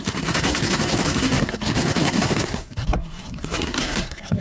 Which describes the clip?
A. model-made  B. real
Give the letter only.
A